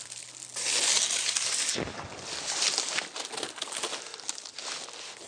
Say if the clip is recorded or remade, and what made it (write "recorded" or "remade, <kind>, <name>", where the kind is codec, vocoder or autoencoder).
recorded